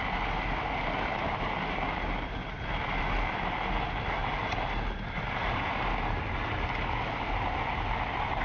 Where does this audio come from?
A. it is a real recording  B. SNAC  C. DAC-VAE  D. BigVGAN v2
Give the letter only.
A